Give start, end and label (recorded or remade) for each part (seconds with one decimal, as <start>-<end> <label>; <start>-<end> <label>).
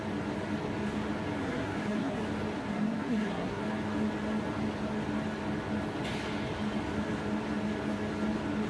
0.0-1.4 recorded; 1.4-2.2 remade; 2.2-2.6 recorded; 2.6-3.6 remade; 3.6-8.7 recorded